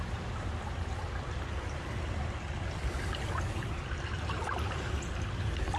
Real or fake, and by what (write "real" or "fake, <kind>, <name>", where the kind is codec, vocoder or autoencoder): real